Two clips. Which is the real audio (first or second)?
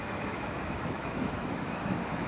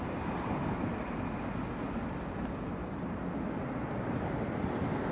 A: second